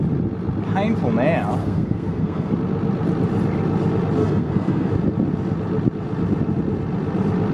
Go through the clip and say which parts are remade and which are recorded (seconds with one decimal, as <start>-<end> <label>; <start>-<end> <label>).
0.0-1.6 recorded; 1.6-2.5 remade; 2.5-4.2 recorded; 4.2-4.9 remade; 4.9-7.5 recorded